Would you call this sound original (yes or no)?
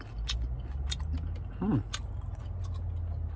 yes